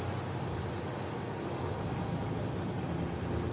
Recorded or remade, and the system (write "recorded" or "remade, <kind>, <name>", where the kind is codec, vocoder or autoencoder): recorded